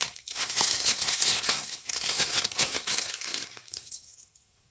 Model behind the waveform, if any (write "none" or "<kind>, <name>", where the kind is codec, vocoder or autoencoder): codec, SNAC